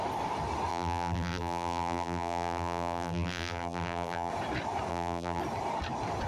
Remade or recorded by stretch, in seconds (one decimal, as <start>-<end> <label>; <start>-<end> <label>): 0.0-0.7 recorded; 0.7-4.3 remade; 4.3-4.9 recorded; 4.9-5.4 remade; 5.4-6.3 recorded

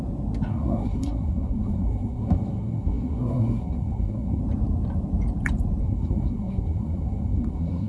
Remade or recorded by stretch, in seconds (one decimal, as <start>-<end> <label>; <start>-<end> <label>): 0.0-0.5 recorded; 0.5-4.4 remade; 4.4-5.8 recorded; 5.8-7.9 remade